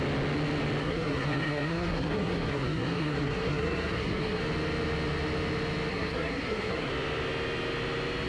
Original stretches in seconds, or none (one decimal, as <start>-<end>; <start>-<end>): 0.0-0.8; 4.4-5.9; 6.9-8.3